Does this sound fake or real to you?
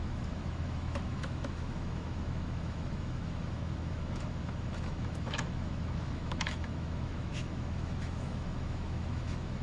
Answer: fake